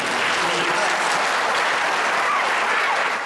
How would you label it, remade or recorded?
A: recorded